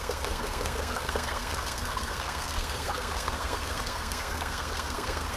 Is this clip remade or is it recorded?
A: remade